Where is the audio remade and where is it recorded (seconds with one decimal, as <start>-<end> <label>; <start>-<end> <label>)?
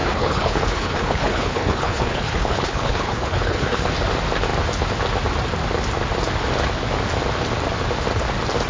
0.0-3.9 remade; 3.9-8.7 recorded